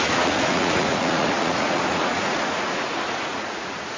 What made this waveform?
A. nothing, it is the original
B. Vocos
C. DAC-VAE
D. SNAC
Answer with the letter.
B